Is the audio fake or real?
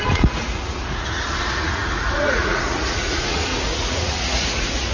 fake